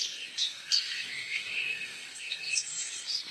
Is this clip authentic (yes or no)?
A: no